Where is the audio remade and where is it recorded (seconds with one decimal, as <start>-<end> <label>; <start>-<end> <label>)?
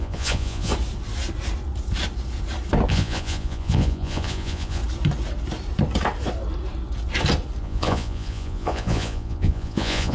0.0-0.7 remade; 0.7-2.9 recorded; 2.9-4.8 remade; 4.8-7.6 recorded; 7.6-10.1 remade